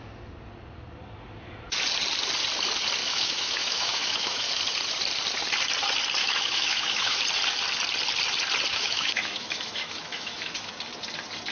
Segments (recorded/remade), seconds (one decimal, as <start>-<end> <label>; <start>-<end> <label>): 0.0-3.0 recorded; 3.0-4.5 remade; 4.5-6.2 recorded; 6.2-7.2 remade; 7.2-8.7 recorded; 8.7-10.7 remade; 10.7-11.5 recorded